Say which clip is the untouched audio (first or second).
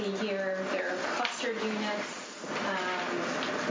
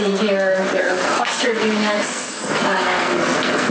first